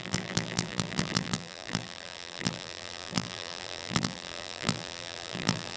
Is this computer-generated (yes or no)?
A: yes